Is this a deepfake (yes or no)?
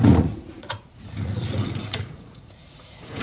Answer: yes